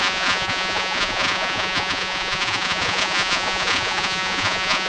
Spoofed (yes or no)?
yes